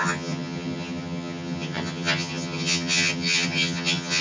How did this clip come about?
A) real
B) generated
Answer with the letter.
B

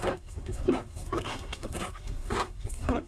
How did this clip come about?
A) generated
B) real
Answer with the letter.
A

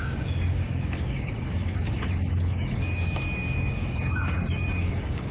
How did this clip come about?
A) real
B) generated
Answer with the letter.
B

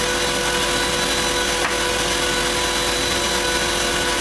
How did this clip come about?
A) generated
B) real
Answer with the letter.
B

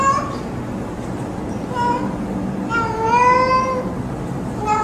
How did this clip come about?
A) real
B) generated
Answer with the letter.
A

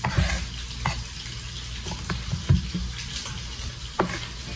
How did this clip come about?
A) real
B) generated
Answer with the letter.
A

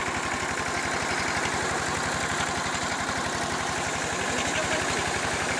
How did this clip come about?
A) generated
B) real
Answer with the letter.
B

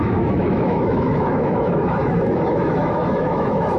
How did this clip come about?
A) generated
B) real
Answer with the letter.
A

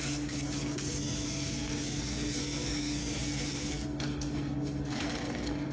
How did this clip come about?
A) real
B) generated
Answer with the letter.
B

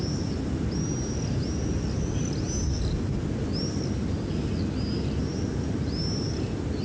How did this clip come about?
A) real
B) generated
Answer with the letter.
A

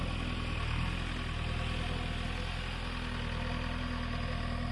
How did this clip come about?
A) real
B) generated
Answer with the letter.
A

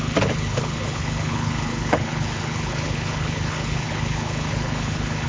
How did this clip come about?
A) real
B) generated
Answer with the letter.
B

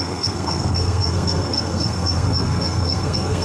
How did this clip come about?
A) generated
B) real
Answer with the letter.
A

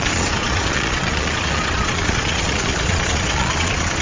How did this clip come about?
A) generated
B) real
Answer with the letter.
A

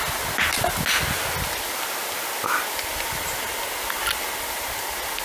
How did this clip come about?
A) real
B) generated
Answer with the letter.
A